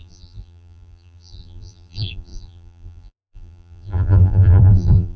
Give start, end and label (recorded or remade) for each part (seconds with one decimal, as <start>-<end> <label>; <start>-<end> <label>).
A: 0.0-5.2 remade